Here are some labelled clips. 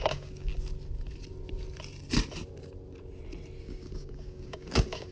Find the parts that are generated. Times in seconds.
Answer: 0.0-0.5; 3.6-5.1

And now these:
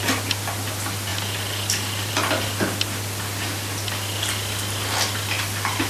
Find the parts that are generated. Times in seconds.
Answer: none

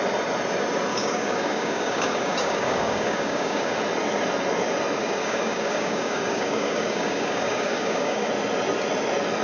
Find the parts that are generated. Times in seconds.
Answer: 0.9-3.8; 5.0-8.3

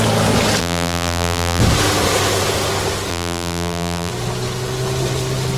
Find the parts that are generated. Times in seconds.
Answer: 0.6-1.6; 3.1-4.1

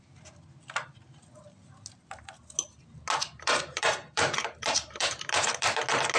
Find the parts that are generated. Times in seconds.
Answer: 3.2-5.8

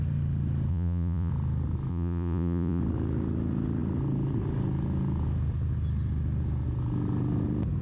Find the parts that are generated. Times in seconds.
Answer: 0.7-1.3; 1.9-2.8

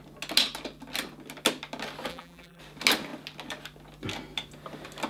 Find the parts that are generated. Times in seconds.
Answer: 2.1-2.6